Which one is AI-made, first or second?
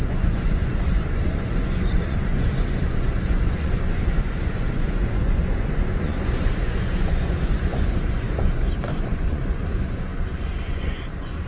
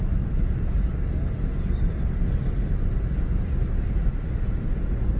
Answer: first